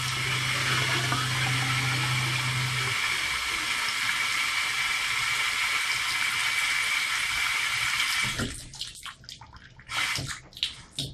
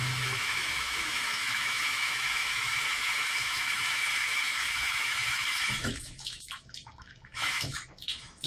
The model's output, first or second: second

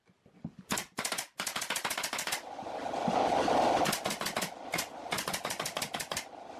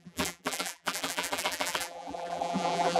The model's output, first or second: second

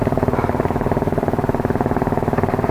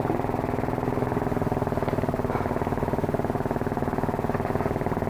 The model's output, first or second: first